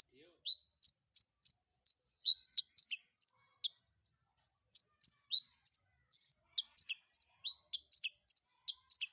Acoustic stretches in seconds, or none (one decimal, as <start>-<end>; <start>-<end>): 0.0-1.7; 2.6-9.1

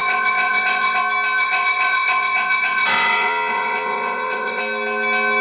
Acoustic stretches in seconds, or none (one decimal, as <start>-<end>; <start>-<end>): 1.0-1.4; 4.6-5.4